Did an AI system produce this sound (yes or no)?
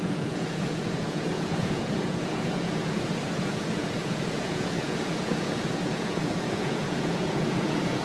yes